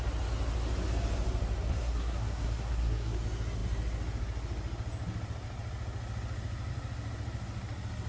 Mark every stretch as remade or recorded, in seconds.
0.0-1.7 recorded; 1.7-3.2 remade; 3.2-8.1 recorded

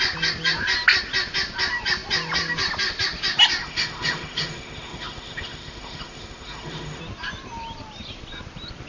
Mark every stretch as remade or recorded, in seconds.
0.0-3.6 recorded; 3.6-7.0 remade; 7.0-8.9 recorded

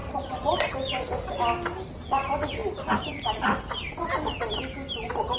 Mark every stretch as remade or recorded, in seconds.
0.0-5.4 recorded

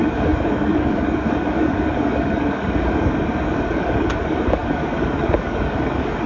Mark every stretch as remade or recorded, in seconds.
0.0-6.3 remade

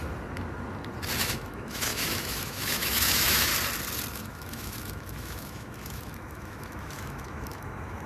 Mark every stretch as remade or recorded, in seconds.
0.0-1.2 recorded; 1.2-3.5 remade; 3.5-4.1 recorded; 4.1-8.1 remade

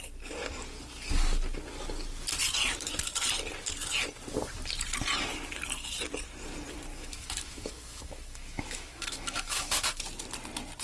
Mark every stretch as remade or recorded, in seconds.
0.0-6.9 recorded; 6.9-10.0 remade; 10.0-10.8 recorded

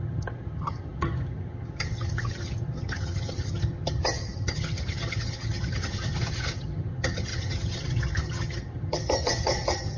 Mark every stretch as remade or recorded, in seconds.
0.0-10.0 remade